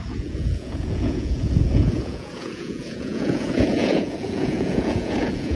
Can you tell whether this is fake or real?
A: fake